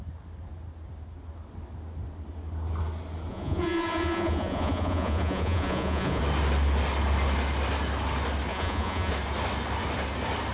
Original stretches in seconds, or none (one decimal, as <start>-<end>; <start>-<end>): 0.0-3.3; 6.2-8.5; 9.1-10.5